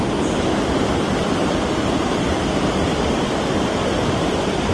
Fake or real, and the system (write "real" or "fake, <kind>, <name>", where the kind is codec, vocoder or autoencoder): real